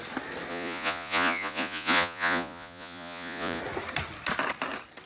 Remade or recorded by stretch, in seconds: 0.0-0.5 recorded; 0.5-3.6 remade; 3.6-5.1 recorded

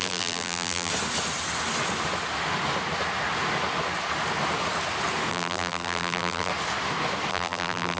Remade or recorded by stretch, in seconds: 0.0-0.9 remade; 0.9-5.3 recorded; 5.3-6.5 remade; 6.5-7.3 recorded; 7.3-8.0 remade

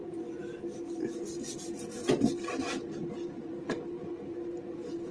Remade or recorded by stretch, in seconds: 0.0-5.1 recorded